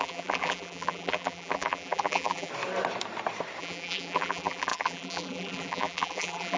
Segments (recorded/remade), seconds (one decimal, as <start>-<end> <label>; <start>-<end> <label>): 0.0-2.5 remade; 2.5-3.6 recorded; 3.6-6.6 remade